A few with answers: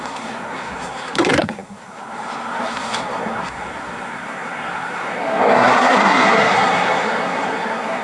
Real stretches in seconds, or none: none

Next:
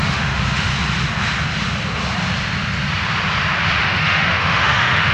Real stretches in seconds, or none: 0.7-3.8

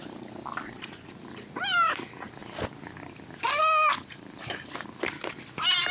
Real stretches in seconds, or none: 0.0-5.9

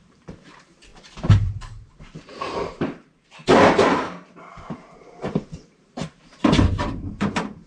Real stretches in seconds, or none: none

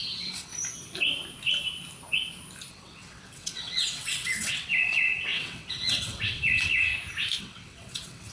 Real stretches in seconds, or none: 0.5-2.7; 6.9-7.4

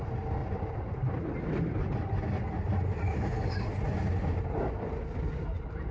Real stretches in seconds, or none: 0.0-0.4; 3.5-5.9

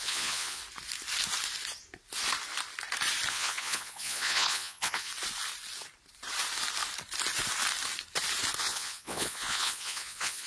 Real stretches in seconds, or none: 0.6-3.3; 5.1-8.6

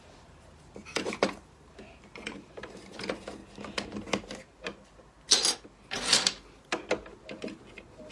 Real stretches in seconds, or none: 3.4-8.1